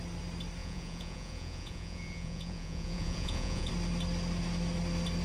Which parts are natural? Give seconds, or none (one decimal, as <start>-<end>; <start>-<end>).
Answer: 0.0-0.6; 3.7-5.2

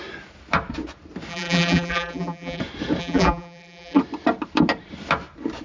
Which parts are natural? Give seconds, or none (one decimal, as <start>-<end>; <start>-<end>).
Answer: 0.0-1.3; 2.6-3.0; 4.0-5.6